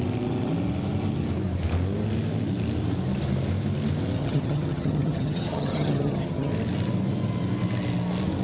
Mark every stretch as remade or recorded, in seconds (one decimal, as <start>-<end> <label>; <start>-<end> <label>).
0.0-4.2 recorded; 4.2-6.5 remade; 6.5-8.4 recorded